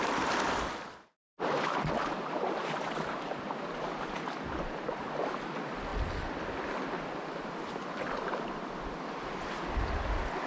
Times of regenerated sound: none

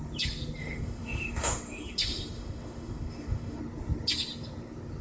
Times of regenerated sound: 0.6-3.6 (autoencoder, DAC-VAE)

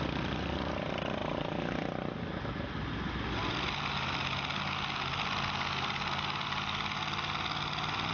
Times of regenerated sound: none

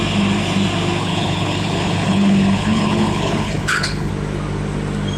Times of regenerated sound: 1.0-4.1 (codec, HILCodec)

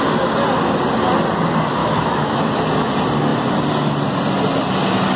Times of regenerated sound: 1.8-2.4 (autoencoder, DAC-VAE)

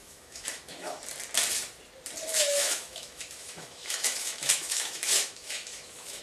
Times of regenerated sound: 0.0-1.0 (autoencoder, DAC-VAE); 2.3-6.2

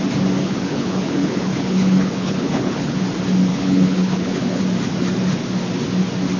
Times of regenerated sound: 0.4-3.0 (codec, HILCodec); 3.5-4.6

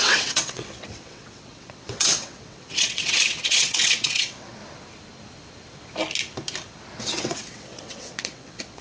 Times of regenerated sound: 0.0-4.6 (vocoder, WaveNeXt); 7.0-8.8